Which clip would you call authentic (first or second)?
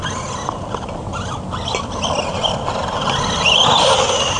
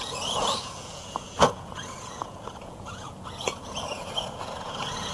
first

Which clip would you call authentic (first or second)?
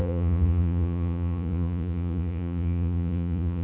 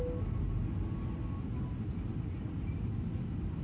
second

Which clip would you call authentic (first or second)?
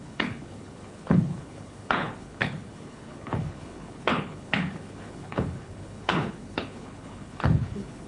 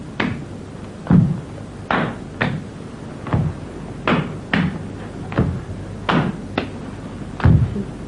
second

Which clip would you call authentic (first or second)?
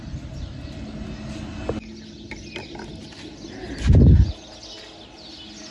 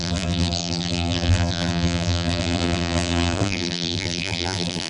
first